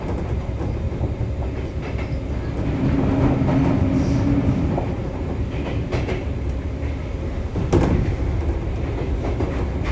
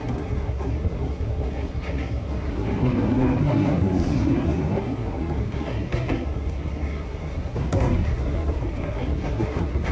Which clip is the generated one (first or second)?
second